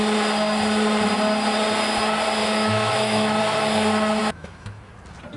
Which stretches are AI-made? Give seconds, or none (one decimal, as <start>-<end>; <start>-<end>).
2.4-3.4; 4.2-4.9